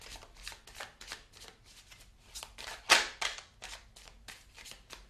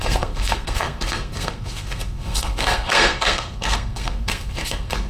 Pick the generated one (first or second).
second